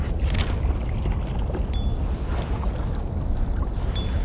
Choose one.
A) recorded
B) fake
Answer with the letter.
A